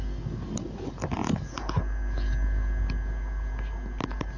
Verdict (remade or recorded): recorded